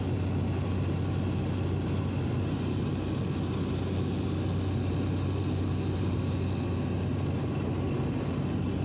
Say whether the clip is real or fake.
real